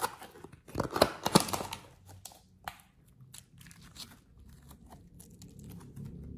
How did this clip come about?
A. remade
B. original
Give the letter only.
B